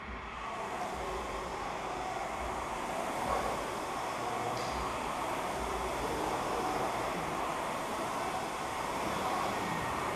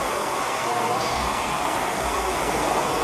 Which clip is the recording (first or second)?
first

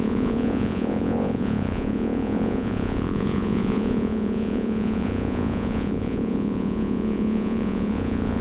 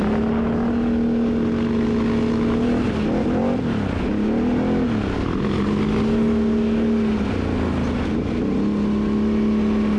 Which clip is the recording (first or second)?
second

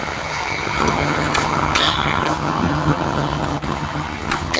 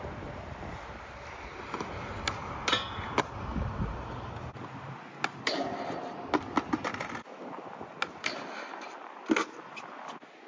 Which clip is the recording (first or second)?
second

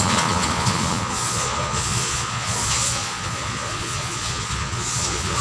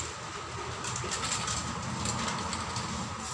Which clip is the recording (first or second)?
second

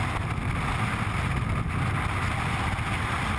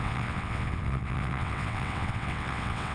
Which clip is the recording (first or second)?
first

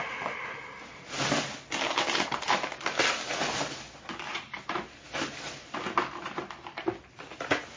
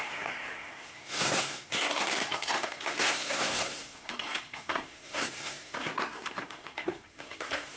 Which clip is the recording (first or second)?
first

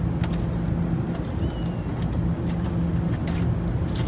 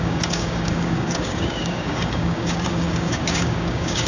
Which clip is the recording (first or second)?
first